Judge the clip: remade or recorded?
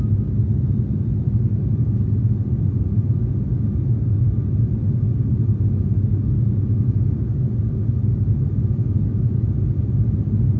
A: recorded